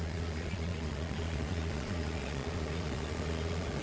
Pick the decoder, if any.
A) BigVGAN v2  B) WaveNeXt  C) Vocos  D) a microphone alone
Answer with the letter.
C